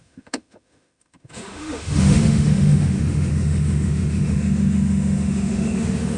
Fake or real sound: fake